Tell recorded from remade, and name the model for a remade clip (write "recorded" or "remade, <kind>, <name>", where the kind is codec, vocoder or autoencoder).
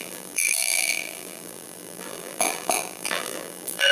remade, vocoder, BigVGAN v2